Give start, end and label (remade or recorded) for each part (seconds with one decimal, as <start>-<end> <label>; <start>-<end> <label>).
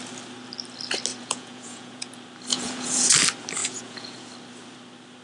0.0-1.1 recorded; 1.1-2.1 remade; 2.1-2.5 recorded; 2.5-3.1 remade; 3.1-3.6 recorded; 3.6-4.3 remade; 4.3-5.2 recorded